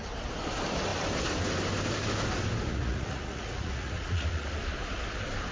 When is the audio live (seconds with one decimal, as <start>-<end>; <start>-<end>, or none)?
0.0-2.7; 4.5-5.5